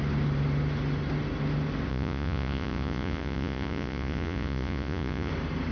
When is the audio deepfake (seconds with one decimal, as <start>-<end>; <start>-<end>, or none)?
1.9-5.3